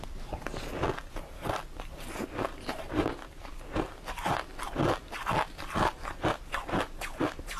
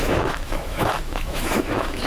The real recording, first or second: first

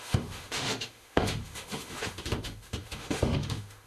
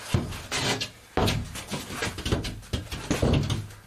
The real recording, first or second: second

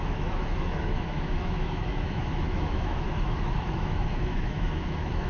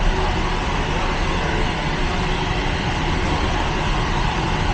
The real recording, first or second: second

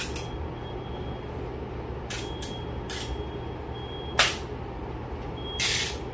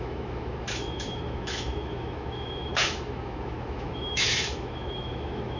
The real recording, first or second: first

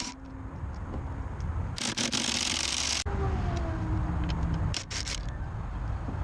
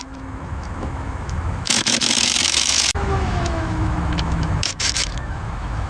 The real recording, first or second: first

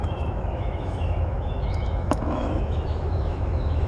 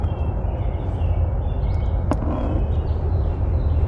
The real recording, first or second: second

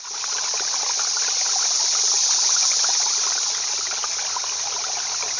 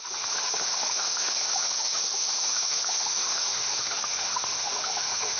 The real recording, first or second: first